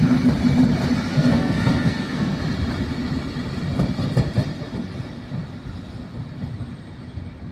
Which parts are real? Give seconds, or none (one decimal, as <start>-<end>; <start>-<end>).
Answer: 0.0-1.1; 2.4-7.5